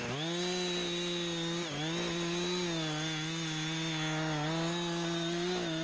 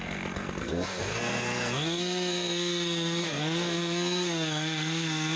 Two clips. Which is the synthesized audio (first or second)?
second